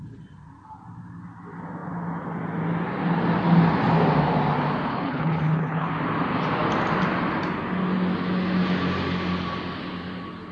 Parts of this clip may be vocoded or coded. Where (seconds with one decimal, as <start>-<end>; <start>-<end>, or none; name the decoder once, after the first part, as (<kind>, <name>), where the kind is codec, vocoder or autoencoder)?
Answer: 4.9-5.9 (codec, HILCodec)